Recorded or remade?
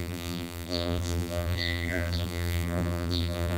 remade